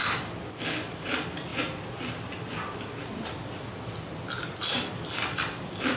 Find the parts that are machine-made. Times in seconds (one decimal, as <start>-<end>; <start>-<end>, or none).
none